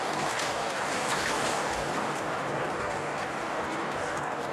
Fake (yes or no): yes